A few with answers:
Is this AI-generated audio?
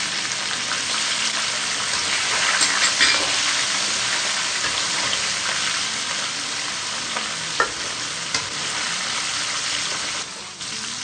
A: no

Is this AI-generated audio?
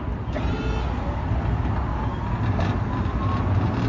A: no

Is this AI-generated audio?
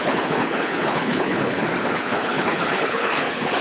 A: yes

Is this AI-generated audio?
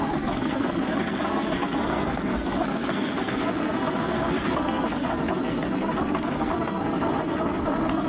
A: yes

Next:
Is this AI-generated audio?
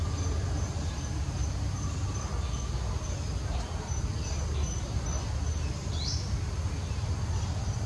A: no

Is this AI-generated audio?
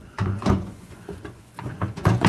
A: yes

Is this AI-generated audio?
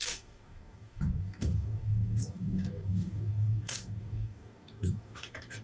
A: yes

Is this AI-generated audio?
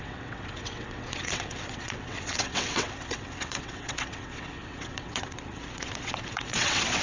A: yes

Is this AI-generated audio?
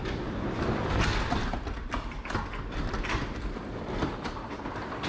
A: no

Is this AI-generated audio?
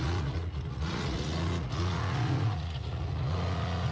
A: yes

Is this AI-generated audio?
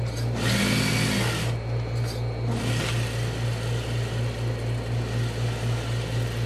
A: no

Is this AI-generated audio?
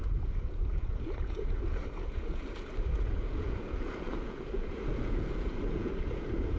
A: yes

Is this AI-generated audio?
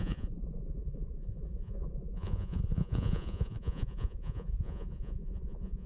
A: yes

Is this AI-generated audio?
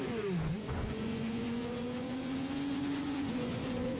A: yes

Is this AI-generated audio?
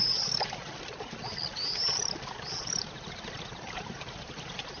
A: yes